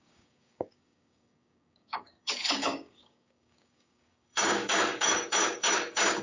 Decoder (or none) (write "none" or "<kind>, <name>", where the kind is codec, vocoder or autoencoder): codec, DAC